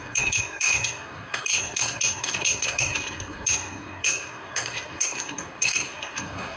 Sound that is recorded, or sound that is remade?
remade